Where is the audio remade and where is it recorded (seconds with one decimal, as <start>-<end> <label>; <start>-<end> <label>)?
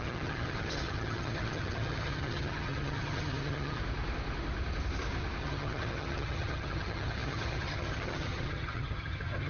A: 0.0-3.8 remade; 3.8-5.4 recorded; 5.4-9.5 remade